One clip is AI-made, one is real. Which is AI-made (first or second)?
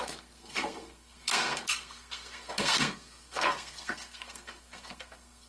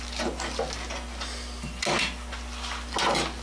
first